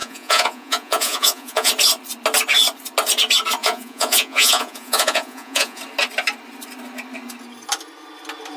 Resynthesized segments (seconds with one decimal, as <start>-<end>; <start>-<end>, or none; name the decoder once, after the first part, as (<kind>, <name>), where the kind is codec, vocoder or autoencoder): 0.0-1.7 (vocoder, Vocos); 3.6-5.8